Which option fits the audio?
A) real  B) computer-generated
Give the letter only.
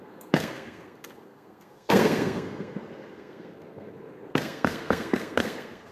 B